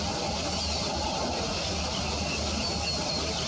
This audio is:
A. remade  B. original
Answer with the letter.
B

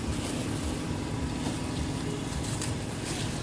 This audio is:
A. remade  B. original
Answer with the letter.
B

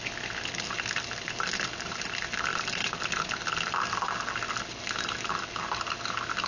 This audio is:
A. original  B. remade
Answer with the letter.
A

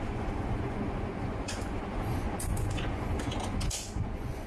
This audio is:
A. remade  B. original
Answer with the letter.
A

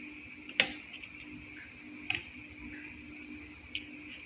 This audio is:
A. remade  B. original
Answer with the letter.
B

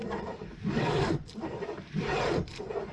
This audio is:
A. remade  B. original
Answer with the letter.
A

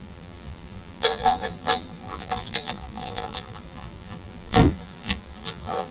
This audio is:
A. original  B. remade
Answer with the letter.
B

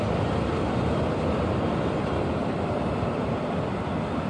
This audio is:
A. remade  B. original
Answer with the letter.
A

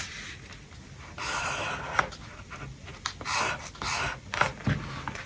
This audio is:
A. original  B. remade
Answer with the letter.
A